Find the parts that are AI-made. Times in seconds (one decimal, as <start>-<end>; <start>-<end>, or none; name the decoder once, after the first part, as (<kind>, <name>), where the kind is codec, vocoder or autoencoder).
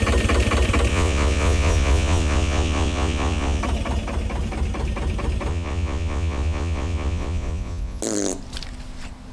0.9-3.6 (vocoder, Vocos); 5.5-8.0